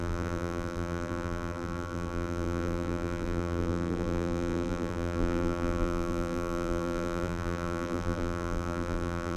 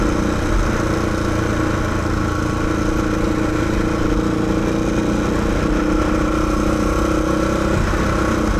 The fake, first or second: first